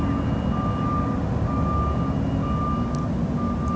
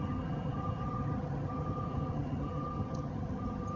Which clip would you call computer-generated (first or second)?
second